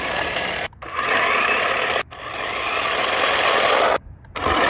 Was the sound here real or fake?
real